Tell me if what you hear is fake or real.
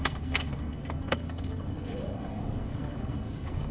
fake